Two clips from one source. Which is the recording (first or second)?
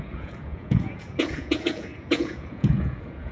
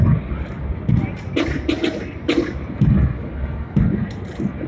second